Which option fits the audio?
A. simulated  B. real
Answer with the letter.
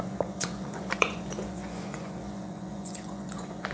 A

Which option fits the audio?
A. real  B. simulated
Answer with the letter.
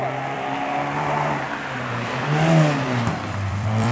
B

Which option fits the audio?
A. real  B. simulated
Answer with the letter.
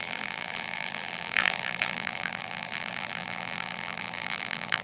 B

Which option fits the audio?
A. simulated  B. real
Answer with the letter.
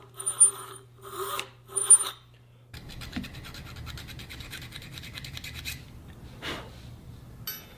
B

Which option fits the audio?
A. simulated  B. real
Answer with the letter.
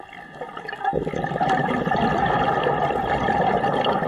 B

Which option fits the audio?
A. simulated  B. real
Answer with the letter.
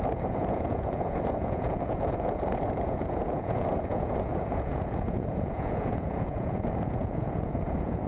A